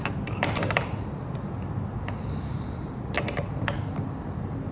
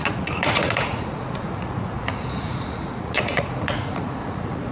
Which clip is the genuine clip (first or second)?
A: first